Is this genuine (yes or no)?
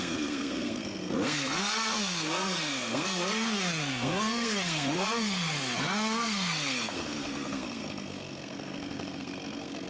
no